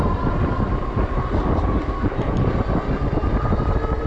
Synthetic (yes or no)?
no